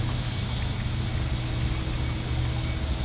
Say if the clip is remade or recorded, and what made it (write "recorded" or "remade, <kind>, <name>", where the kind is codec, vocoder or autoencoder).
recorded